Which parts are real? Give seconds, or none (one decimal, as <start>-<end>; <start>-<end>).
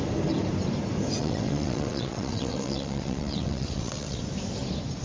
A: 0.0-1.2; 4.2-5.0